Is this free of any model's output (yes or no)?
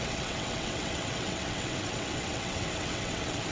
no